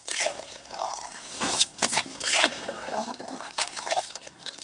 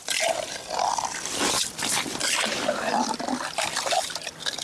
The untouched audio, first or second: second